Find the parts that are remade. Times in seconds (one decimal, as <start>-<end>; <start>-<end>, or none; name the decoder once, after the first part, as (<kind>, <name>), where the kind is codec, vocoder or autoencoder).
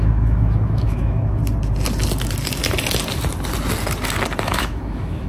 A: 0.0-1.4 (autoencoder, DAC-VAE); 4.4-5.3